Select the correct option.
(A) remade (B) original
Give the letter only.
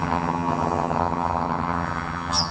A